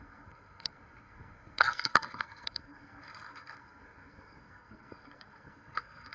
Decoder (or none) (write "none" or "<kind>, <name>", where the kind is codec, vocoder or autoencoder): codec, SNAC